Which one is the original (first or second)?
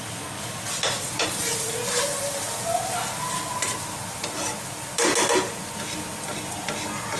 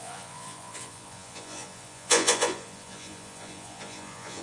first